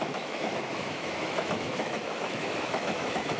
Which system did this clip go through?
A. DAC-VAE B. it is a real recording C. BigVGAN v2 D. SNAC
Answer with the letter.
A